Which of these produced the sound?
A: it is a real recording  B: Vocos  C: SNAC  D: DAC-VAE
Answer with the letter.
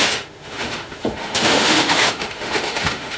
D